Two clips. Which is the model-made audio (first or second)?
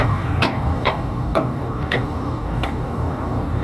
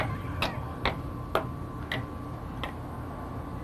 first